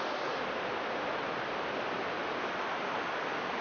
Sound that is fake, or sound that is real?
real